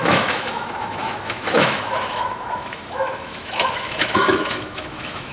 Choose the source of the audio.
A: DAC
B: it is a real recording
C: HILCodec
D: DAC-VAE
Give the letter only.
D